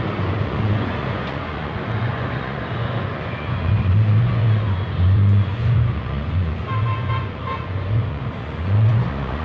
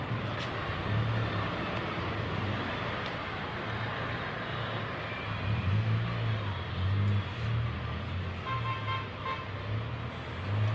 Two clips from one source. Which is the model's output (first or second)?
first